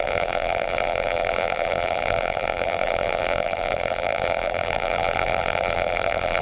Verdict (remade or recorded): remade